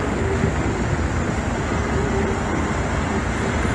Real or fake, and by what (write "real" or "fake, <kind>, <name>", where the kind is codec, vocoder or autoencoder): real